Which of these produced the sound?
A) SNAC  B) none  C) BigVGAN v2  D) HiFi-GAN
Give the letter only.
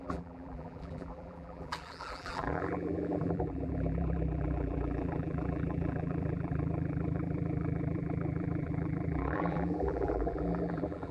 C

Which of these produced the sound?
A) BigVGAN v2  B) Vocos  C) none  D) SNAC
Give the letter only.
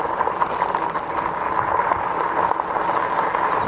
C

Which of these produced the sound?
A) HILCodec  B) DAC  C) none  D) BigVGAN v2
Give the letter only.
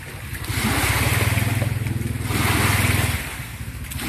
C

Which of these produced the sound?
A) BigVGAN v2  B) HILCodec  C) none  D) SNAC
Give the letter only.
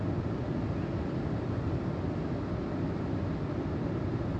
A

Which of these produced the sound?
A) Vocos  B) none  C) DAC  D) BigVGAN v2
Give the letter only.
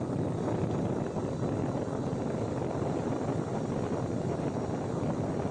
B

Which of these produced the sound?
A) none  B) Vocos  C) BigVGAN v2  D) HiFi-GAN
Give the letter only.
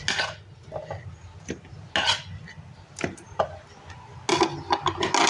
A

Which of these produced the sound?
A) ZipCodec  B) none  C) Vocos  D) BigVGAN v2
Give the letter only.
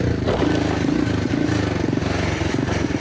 B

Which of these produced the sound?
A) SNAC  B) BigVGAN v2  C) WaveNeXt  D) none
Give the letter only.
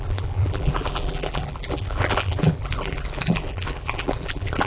B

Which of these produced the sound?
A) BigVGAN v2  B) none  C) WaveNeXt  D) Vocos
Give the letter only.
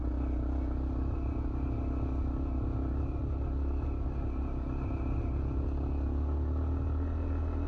B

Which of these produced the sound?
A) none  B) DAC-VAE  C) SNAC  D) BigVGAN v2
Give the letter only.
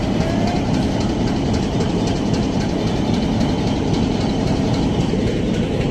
D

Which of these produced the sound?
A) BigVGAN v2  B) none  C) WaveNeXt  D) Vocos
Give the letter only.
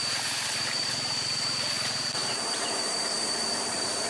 A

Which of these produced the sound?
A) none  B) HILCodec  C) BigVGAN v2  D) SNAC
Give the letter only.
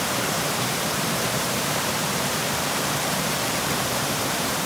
C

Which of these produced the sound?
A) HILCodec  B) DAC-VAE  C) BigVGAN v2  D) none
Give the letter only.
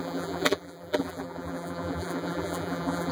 C